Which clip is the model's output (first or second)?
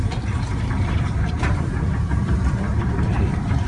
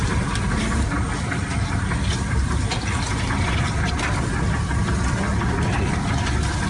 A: first